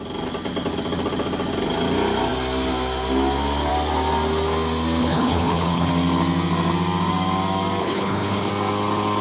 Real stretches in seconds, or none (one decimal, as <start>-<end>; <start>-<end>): 0.0-5.0; 5.9-7.8; 8.5-9.2